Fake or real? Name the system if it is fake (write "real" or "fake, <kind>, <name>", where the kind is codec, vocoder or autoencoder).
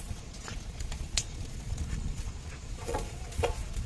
fake, vocoder, Vocos